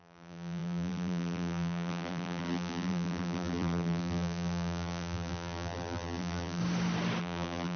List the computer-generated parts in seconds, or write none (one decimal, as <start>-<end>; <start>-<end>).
0.0-6.6; 7.2-7.8